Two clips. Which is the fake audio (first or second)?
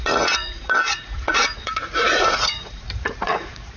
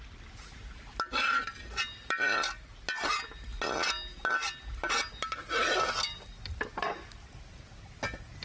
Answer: first